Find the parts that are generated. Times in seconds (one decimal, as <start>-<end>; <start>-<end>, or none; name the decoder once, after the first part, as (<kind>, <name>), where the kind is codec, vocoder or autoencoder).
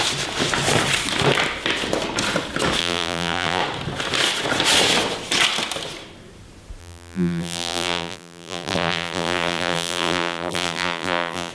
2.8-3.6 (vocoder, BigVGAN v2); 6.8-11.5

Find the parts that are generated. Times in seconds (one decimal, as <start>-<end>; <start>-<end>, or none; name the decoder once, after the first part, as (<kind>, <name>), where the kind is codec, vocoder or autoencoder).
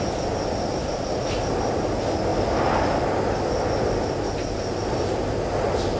0.0-2.3 (vocoder, BigVGAN v2)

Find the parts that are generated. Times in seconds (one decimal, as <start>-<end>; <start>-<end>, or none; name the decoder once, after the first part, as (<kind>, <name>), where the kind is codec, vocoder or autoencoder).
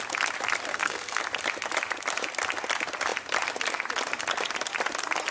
0.7-1.2 (codec, SNAC)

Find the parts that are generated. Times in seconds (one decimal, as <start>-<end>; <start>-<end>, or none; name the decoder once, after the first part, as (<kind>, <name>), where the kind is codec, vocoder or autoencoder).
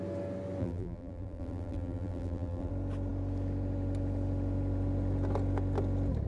0.6-2.7 (vocoder, BigVGAN v2)